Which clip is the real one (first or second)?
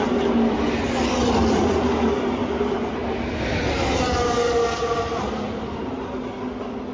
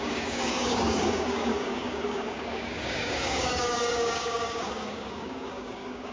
first